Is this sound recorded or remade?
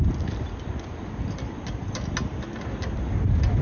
recorded